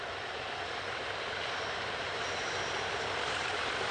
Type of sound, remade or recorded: remade